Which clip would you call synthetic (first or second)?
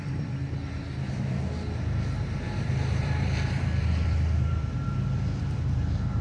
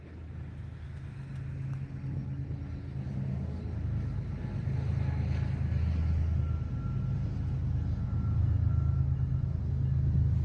first